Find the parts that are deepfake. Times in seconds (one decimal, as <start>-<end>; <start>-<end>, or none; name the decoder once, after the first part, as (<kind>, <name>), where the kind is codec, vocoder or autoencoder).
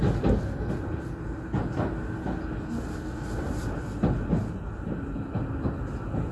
4.3-5.7 (vocoder, BigVGAN v2)